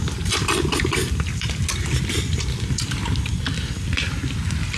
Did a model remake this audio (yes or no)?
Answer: no